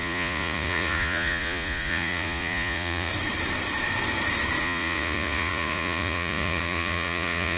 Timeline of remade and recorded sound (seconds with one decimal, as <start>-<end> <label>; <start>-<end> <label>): 0.0-3.1 remade; 3.1-4.6 recorded; 4.6-7.6 remade